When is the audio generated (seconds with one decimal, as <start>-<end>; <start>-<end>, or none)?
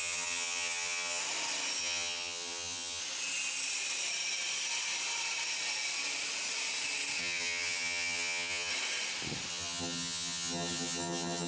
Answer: 0.0-1.2; 1.8-3.0; 7.2-8.7; 9.5-11.5